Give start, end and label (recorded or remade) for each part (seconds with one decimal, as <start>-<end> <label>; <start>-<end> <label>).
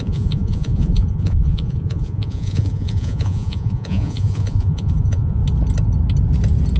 0.0-5.4 remade; 5.4-6.8 recorded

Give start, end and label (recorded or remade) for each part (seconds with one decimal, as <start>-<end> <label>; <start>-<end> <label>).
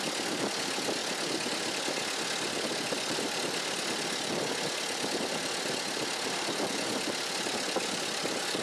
0.0-8.6 recorded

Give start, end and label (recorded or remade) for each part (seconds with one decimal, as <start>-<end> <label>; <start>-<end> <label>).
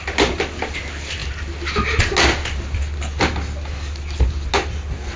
0.0-5.2 recorded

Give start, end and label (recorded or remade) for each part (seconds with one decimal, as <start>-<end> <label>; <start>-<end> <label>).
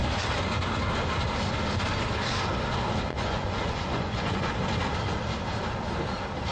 0.0-3.1 recorded; 3.1-4.5 remade; 4.5-6.5 recorded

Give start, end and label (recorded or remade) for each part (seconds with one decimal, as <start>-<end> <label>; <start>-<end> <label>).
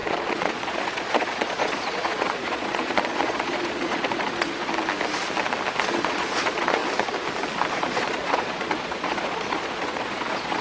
0.0-4.7 remade; 4.7-5.9 recorded; 5.9-6.8 remade; 6.8-7.7 recorded; 7.7-10.6 remade